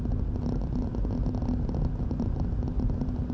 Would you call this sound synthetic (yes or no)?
no